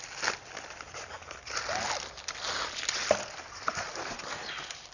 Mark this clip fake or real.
real